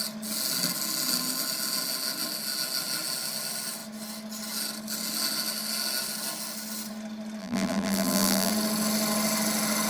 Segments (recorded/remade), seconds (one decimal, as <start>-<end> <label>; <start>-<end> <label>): 0.0-7.4 recorded; 7.4-8.5 remade; 8.5-9.9 recorded